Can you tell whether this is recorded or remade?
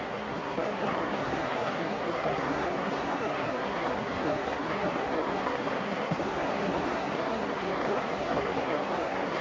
remade